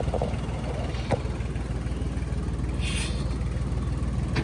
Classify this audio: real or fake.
real